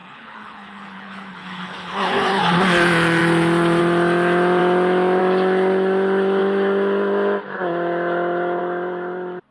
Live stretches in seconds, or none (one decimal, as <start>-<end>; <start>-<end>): 2.4-9.5